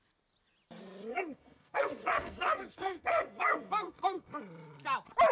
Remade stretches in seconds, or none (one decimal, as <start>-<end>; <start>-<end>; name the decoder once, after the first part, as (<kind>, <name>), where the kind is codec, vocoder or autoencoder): 1.1-4.3 (codec, SNAC)